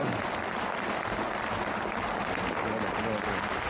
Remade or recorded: recorded